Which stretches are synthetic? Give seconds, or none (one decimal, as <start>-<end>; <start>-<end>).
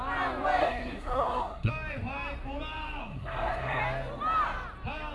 0.6-1.7; 3.0-3.8